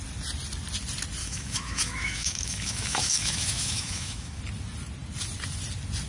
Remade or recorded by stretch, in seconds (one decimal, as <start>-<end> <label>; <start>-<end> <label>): 0.0-1.2 recorded; 1.2-4.4 remade; 4.4-6.1 recorded